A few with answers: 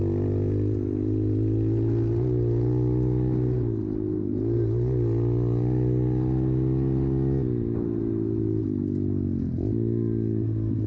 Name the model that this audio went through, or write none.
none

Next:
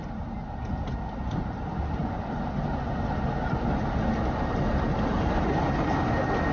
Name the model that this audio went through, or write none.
none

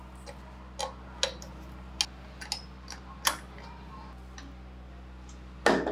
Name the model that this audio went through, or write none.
none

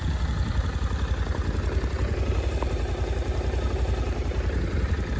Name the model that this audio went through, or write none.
none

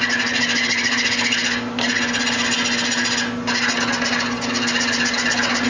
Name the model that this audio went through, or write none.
none